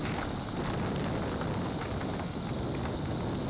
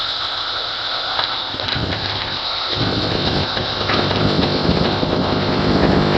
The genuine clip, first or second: first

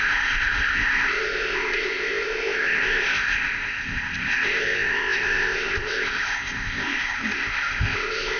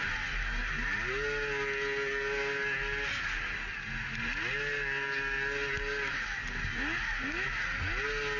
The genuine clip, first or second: second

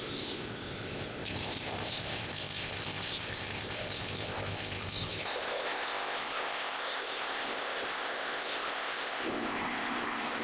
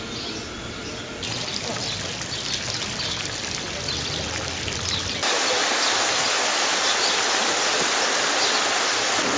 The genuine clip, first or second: second